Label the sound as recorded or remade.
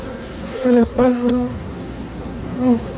remade